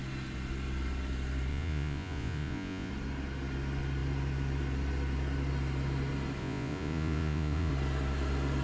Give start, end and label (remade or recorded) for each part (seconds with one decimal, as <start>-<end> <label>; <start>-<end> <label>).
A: 0.0-1.5 recorded; 1.5-2.9 remade; 2.9-6.4 recorded; 6.4-7.7 remade; 7.7-8.6 recorded